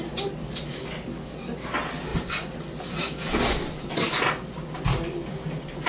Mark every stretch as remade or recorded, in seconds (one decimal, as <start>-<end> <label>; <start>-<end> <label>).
0.0-5.9 recorded